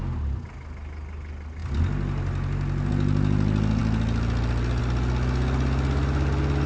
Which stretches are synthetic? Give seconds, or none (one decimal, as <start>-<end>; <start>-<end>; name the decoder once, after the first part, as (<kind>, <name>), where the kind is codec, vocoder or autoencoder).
none